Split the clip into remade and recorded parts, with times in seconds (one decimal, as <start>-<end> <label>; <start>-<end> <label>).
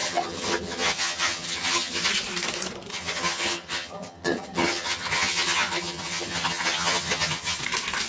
0.0-2.1 remade; 2.1-2.9 recorded; 2.9-7.6 remade; 7.6-8.1 recorded